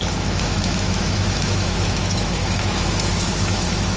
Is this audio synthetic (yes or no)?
yes